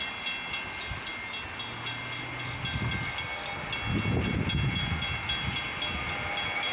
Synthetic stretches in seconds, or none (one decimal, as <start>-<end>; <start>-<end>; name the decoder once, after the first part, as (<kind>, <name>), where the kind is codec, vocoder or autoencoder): none